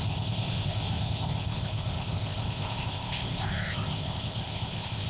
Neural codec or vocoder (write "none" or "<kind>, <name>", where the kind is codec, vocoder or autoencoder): codec, ZipCodec